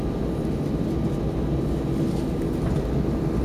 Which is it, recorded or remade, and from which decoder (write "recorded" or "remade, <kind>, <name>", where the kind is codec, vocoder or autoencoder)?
recorded